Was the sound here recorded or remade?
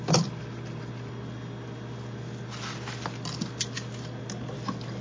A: recorded